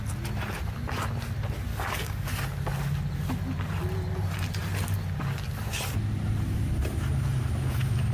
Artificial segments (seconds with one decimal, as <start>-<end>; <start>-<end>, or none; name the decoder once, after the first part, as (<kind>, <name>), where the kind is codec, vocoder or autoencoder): 1.7-2.3 (codec, DAC)